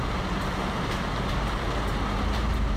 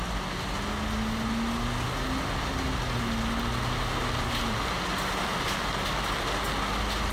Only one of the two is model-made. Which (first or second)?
first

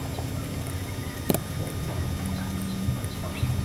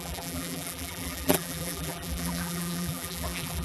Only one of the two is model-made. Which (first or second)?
second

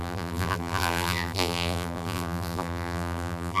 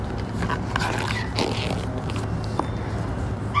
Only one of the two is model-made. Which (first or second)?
first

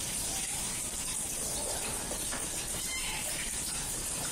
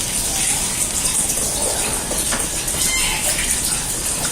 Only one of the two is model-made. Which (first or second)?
first